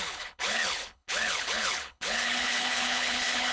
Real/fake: fake